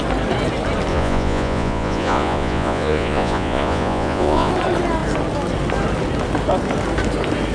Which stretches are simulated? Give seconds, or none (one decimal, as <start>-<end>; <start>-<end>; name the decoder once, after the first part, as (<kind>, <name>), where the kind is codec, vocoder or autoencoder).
0.9-4.5 (vocoder, Vocos)